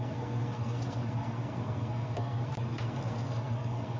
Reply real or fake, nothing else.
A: fake